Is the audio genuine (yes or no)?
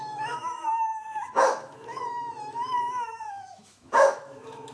no